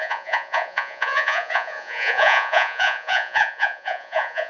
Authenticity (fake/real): fake